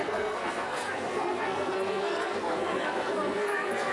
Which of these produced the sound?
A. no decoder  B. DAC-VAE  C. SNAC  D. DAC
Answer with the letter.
C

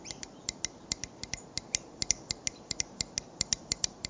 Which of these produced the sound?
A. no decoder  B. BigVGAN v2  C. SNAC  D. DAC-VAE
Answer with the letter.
A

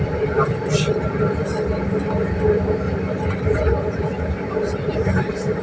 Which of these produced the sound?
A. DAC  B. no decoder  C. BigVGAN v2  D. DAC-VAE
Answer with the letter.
B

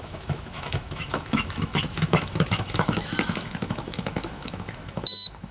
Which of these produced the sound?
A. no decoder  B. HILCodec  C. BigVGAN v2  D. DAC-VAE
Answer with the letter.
D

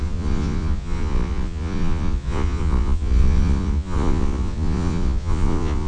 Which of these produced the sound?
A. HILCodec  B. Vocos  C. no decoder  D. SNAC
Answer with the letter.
B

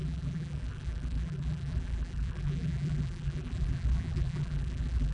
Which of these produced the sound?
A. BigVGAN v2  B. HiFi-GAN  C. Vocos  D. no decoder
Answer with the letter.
A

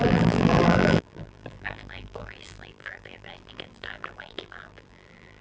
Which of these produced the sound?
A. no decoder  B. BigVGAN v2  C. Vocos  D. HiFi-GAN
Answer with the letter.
B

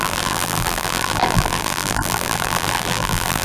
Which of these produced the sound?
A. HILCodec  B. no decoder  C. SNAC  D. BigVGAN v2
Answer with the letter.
D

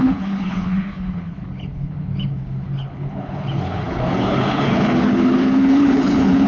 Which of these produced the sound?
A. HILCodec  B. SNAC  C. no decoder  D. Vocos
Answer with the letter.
A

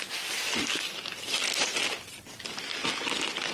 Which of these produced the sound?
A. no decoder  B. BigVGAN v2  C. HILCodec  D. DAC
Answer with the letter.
A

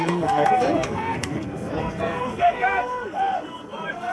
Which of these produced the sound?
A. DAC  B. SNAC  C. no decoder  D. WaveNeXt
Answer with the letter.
B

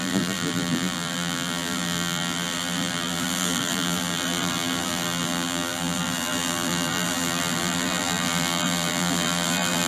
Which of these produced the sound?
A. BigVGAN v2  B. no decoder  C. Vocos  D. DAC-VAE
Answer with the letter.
A